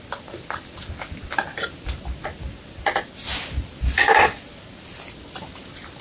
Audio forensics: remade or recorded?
recorded